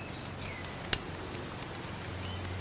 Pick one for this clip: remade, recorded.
recorded